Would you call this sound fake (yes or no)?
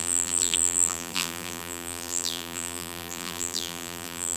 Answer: yes